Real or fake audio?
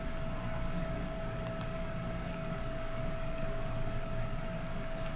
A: fake